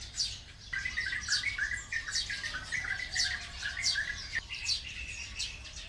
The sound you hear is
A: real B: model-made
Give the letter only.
B